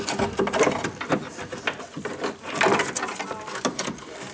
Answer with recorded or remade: recorded